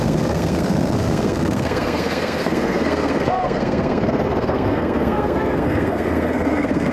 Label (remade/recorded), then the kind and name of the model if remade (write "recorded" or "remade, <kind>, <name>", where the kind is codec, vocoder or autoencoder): remade, codec, SNAC